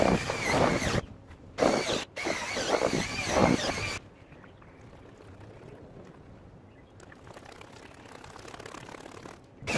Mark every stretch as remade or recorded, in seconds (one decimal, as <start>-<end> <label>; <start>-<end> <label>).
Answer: 0.0-9.8 recorded